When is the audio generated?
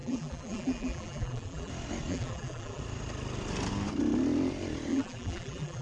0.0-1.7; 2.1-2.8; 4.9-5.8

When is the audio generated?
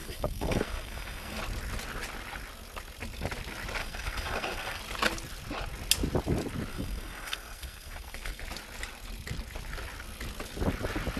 0.0-1.4; 3.8-4.8; 6.7-8.4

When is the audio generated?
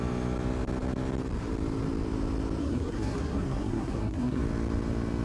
2.6-4.4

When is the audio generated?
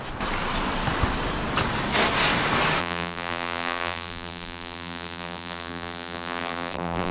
2.8-7.1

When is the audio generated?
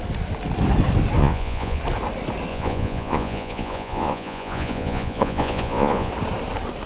1.2-1.8; 2.5-6.1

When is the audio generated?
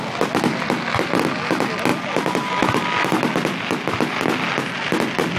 none